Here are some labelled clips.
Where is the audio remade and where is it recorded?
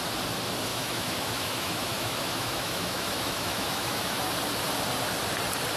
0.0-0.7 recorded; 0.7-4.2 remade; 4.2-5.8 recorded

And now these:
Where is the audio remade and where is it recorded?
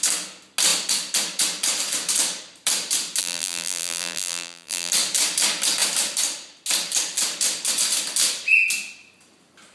0.0-3.2 recorded; 3.2-4.9 remade; 4.9-9.7 recorded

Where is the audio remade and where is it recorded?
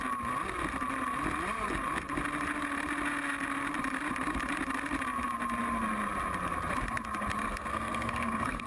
0.0-7.4 recorded; 7.4-8.7 remade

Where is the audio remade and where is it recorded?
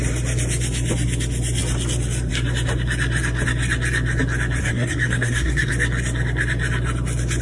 0.0-4.6 recorded; 4.6-5.7 remade; 5.7-7.4 recorded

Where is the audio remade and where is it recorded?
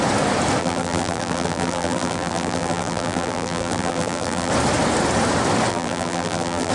0.0-0.6 recorded; 0.6-4.5 remade; 4.5-5.7 recorded; 5.7-6.7 remade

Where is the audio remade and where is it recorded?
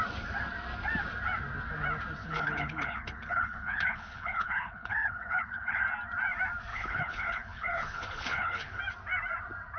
0.0-2.2 recorded; 2.2-5.8 remade; 5.8-6.7 recorded; 6.7-8.8 remade; 8.8-9.8 recorded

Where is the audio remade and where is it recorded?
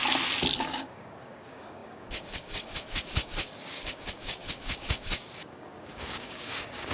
0.0-0.6 recorded; 0.6-6.9 remade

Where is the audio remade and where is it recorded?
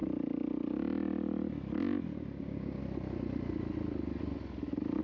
0.0-2.4 recorded; 2.4-2.8 remade; 2.8-5.0 recorded